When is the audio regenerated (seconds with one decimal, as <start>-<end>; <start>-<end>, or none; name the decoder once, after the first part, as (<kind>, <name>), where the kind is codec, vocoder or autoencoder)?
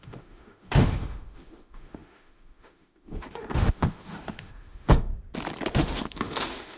0.0-5.1 (autoencoder, DAC-VAE); 5.7-6.8